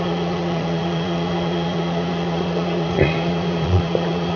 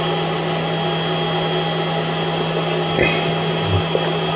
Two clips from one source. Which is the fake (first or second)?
first